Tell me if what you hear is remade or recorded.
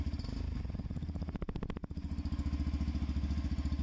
recorded